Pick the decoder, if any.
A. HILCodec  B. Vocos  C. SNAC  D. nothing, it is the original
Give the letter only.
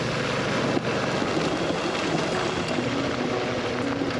D